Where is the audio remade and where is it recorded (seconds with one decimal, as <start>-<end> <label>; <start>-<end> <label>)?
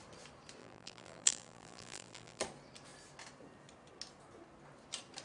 0.0-0.6 recorded; 0.6-2.4 remade; 2.4-5.2 recorded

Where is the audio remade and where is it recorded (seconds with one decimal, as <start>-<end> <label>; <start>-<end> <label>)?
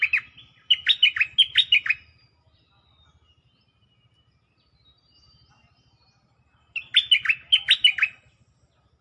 0.0-9.0 recorded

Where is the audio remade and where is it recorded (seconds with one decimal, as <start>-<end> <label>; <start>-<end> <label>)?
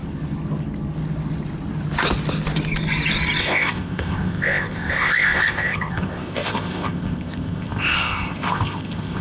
0.0-3.4 recorded; 3.4-9.2 remade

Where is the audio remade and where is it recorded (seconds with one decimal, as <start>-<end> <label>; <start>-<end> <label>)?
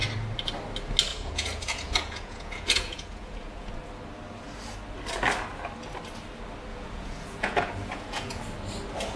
0.0-1.1 recorded; 1.1-3.7 remade; 3.7-6.7 recorded; 6.7-8.4 remade; 8.4-9.2 recorded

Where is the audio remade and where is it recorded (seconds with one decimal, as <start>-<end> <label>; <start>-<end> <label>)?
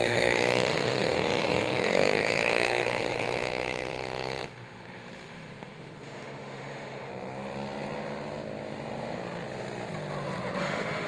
0.0-7.1 remade; 7.1-10.6 recorded; 10.6-11.1 remade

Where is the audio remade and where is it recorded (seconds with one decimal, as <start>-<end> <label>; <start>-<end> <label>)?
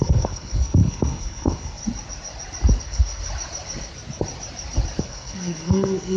0.0-1.8 remade; 1.8-2.8 recorded; 2.8-3.2 remade; 3.2-5.0 recorded; 5.0-6.2 remade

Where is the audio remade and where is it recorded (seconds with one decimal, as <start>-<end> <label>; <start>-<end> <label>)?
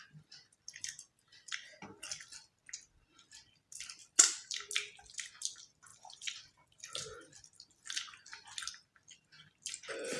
0.0-5.9 recorded; 5.9-6.8 remade; 6.8-10.2 recorded